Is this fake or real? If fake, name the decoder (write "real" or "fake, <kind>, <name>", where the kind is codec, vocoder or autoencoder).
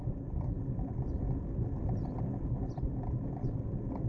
real